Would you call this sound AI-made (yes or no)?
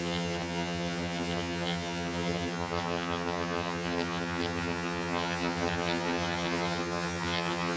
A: yes